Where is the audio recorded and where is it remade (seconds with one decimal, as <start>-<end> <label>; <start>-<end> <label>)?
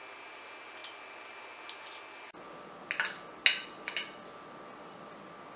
0.0-5.6 recorded